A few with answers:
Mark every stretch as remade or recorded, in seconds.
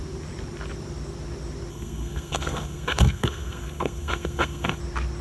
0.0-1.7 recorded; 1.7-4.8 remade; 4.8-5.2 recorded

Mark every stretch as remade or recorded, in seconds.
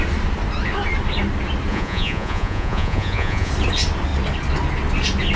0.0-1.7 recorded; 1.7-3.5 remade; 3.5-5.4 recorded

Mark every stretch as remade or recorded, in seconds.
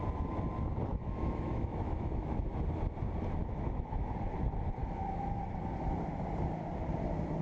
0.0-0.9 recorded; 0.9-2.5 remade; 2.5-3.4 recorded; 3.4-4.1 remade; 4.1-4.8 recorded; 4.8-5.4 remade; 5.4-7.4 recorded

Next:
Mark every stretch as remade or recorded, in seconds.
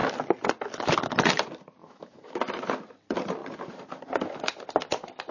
0.0-1.8 recorded; 1.8-2.4 remade; 2.4-5.3 recorded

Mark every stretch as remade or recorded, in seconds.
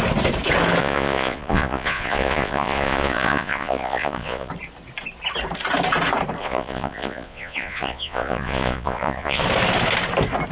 0.0-0.8 recorded; 0.8-4.5 remade; 4.5-6.4 recorded; 6.4-9.4 remade; 9.4-10.5 recorded